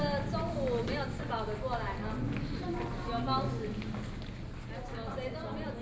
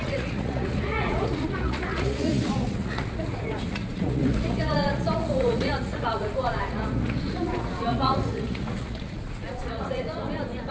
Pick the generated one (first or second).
second